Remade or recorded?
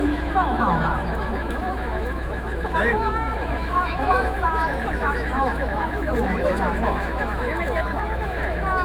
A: remade